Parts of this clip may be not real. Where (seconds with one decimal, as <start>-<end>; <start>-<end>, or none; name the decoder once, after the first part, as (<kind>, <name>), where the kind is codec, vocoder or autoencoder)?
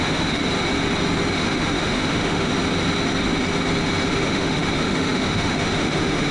0.0-0.4 (autoencoder, DAC-VAE); 1.3-2.5; 4.1-6.3